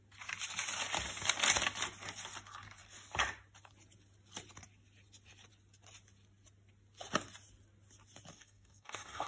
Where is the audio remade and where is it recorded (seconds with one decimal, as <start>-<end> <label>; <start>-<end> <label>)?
0.0-8.3 recorded; 8.3-9.3 remade